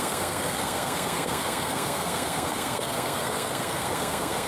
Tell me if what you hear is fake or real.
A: fake